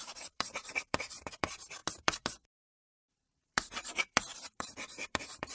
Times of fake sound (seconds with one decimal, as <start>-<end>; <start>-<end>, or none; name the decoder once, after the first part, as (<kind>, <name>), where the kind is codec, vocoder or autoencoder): 0.0-5.5 (vocoder, BigVGAN v2)